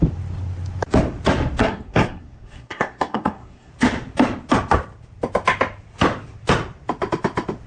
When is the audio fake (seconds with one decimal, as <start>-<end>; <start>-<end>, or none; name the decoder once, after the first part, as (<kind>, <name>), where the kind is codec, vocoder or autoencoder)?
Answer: 1.6-3.7 (codec, SNAC)